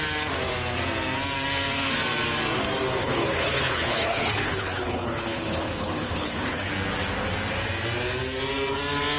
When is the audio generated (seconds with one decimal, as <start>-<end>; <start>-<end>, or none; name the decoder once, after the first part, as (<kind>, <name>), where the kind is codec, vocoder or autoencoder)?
3.0-6.7 (codec, HILCodec)